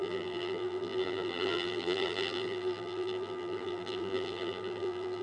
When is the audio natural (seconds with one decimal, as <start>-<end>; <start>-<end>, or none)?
none